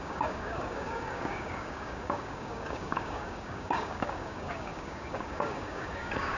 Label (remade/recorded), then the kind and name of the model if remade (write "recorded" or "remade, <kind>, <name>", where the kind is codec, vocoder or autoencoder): remade, codec, DAC